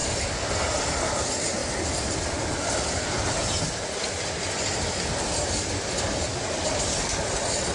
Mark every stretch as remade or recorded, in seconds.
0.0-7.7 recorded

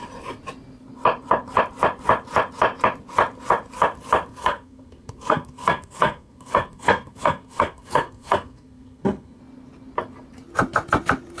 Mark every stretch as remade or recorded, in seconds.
0.0-4.3 recorded; 4.3-9.4 remade; 9.4-11.4 recorded

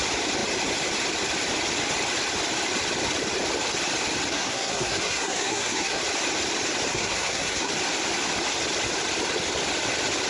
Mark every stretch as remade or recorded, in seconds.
0.0-4.3 recorded; 4.3-6.0 remade; 6.0-6.9 recorded; 6.9-7.7 remade; 7.7-10.3 recorded

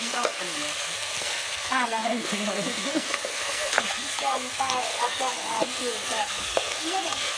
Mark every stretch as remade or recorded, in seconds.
0.0-7.4 remade

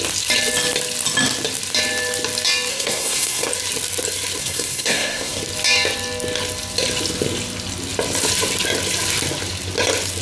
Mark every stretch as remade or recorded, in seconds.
0.0-2.7 recorded; 2.7-3.5 remade; 3.5-4.4 recorded; 4.4-5.4 remade; 5.4-10.2 recorded

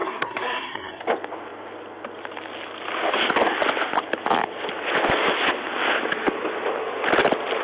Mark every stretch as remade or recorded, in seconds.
0.0-1.0 remade; 1.0-7.6 recorded